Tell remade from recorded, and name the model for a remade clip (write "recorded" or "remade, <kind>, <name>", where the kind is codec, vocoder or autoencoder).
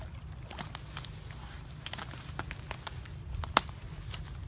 recorded